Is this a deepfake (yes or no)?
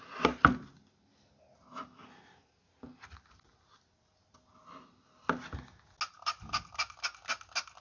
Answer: no